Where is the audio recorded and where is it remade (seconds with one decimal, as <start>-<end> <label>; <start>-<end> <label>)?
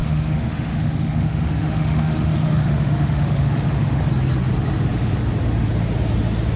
0.0-4.0 remade; 4.0-6.6 recorded